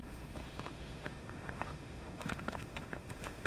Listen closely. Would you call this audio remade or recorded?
remade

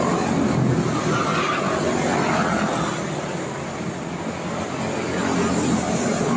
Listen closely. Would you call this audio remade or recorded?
recorded